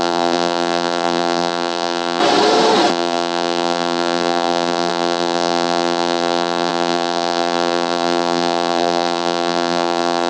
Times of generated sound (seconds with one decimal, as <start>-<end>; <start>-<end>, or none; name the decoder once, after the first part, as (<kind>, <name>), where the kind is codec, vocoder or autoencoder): 0.0-2.2 (vocoder, BigVGAN v2); 2.9-10.3